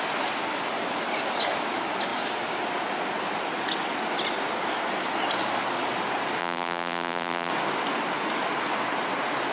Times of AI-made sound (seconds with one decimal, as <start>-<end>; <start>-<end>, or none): 6.4-7.5